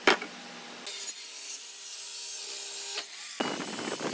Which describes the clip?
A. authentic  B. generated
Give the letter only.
A